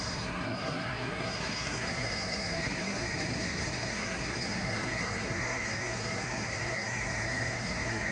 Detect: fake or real fake